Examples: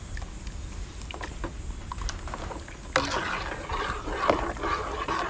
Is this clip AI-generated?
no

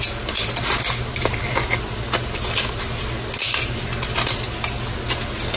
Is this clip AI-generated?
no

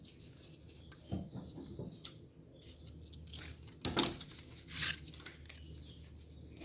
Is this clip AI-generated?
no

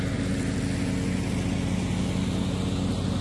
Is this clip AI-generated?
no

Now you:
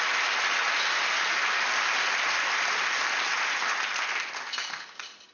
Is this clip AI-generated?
no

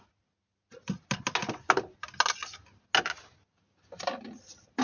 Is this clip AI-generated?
no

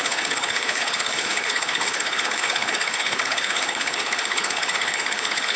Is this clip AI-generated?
yes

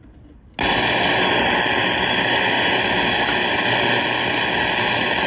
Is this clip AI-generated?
no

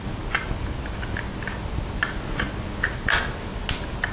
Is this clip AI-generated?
no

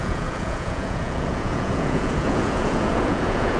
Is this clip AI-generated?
yes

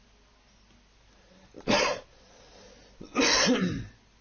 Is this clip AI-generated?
no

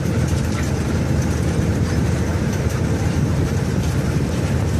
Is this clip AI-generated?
yes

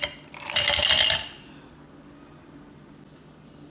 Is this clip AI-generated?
no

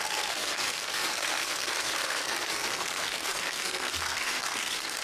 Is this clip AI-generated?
yes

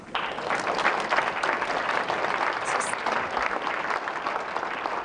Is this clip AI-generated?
no